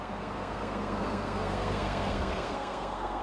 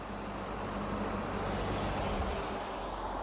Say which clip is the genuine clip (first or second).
second